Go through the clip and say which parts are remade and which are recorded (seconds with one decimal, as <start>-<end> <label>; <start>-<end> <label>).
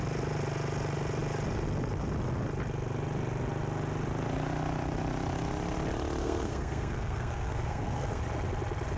0.0-6.2 recorded; 6.2-8.2 remade; 8.2-9.0 recorded